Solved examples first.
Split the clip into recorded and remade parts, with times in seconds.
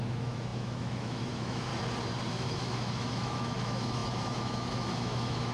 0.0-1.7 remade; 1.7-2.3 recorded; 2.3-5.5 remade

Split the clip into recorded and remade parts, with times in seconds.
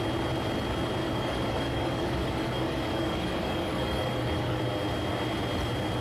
0.0-1.0 recorded; 1.0-4.6 remade; 4.6-6.0 recorded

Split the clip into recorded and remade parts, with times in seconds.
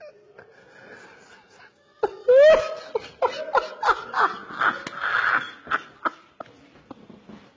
0.0-7.6 recorded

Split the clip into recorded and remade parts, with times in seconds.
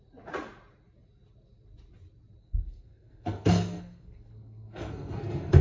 0.0-2.4 recorded; 2.4-5.6 remade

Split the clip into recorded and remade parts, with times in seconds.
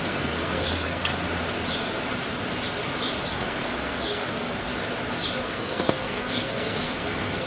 0.0-1.1 remade; 1.1-3.3 recorded; 3.3-4.7 remade; 4.7-5.4 recorded; 5.4-7.5 remade